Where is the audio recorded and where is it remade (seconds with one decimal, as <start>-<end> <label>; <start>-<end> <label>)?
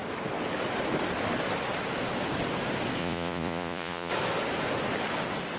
0.0-3.0 recorded; 3.0-4.1 remade; 4.1-5.6 recorded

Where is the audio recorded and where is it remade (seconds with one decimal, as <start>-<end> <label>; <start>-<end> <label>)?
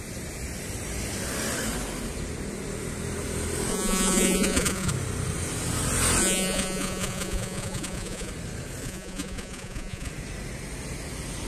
0.0-3.7 recorded; 3.7-4.9 remade; 4.9-6.2 recorded; 6.2-8.3 remade; 8.3-8.8 recorded; 8.8-10.1 remade; 10.1-11.5 recorded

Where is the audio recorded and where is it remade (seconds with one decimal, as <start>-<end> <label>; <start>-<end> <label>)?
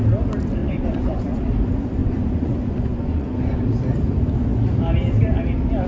0.0-0.6 recorded; 0.6-1.4 remade; 1.4-2.0 recorded; 2.0-3.6 remade; 3.6-5.9 recorded